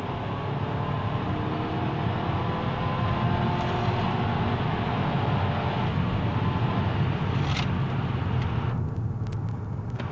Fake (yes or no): no